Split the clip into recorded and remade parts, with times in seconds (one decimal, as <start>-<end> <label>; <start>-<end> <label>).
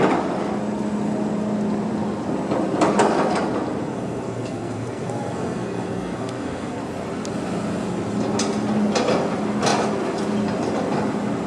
0.0-3.8 recorded; 3.8-6.8 remade; 6.8-11.5 recorded